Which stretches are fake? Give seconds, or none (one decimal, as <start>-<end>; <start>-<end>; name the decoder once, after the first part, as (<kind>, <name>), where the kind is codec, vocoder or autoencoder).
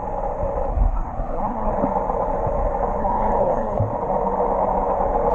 0.7-1.7 (codec, SNAC); 3.0-3.8